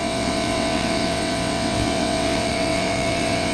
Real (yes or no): no